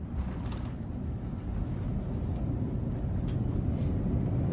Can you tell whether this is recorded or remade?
recorded